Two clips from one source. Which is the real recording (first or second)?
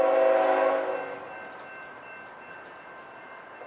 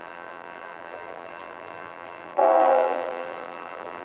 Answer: first